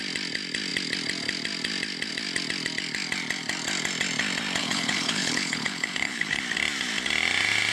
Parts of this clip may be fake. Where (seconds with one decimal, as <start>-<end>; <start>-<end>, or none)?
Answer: 4.6-6.4